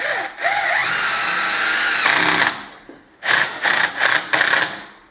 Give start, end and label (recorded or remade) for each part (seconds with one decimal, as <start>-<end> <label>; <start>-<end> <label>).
0.0-3.1 recorded; 3.1-3.9 remade; 3.9-5.1 recorded